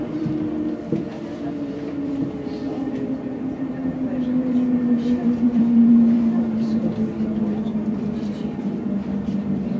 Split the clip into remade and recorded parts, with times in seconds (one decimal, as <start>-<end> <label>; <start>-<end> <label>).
0.0-6.8 remade; 6.8-7.4 recorded; 7.4-9.8 remade